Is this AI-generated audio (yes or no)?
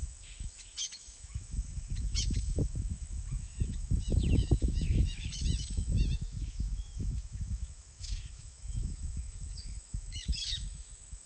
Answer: yes